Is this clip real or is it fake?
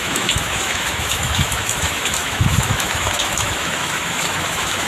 fake